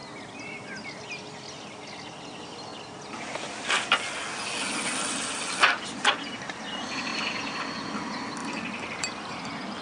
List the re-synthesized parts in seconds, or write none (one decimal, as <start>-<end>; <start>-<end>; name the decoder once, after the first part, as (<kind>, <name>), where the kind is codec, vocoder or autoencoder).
7.1-7.6 (vocoder, BigVGAN v2); 8.4-9.3